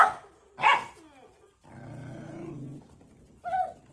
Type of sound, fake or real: real